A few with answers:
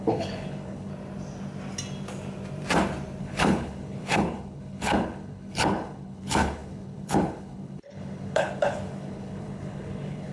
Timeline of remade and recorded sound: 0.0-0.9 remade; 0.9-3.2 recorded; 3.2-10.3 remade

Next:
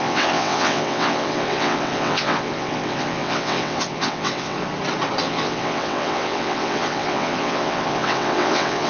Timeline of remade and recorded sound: 0.0-4.6 remade; 4.6-5.2 recorded; 5.2-8.9 remade

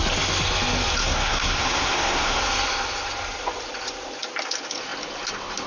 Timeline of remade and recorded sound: 0.0-1.0 recorded; 1.0-2.4 remade; 2.4-5.7 recorded

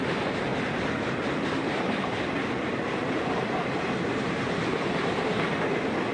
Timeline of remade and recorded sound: 0.0-2.7 recorded; 2.7-5.5 remade; 5.5-6.1 recorded

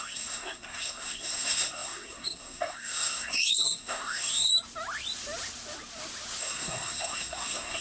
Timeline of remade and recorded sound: 0.0-4.5 remade; 4.5-6.4 recorded; 6.4-7.8 remade

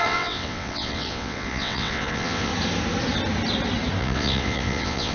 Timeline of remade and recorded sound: 0.0-2.5 remade; 2.5-4.0 recorded; 4.0-5.1 remade

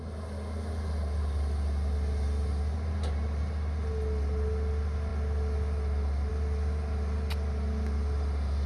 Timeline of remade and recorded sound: 0.0-8.7 recorded